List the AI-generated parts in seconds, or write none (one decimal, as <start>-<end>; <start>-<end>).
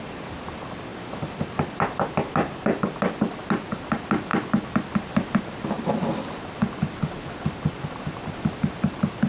none